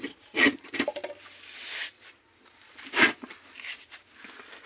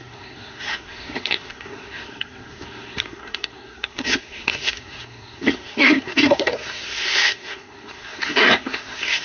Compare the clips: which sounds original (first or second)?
first